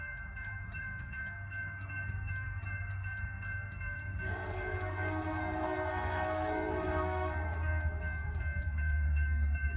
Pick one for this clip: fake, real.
fake